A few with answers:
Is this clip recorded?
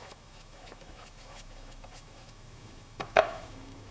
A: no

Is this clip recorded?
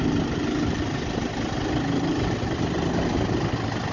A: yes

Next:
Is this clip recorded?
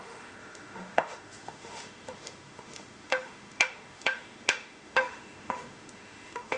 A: no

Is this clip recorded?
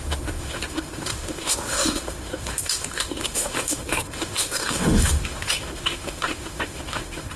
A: no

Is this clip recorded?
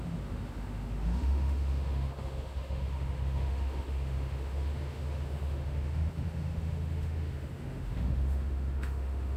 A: no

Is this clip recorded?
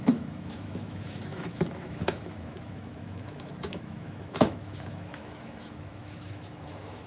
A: no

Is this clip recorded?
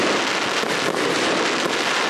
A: yes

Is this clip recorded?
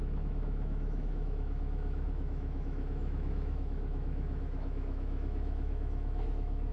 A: no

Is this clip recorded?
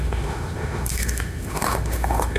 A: no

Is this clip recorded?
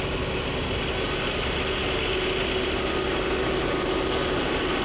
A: yes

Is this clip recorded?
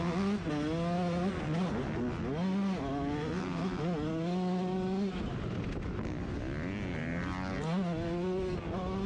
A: yes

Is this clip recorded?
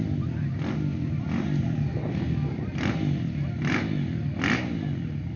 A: yes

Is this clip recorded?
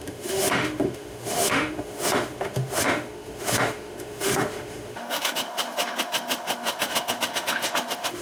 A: no